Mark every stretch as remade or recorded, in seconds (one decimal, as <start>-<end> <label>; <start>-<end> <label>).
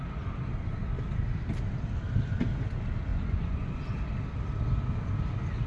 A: 0.0-3.1 recorded; 3.1-3.8 remade; 3.8-5.7 recorded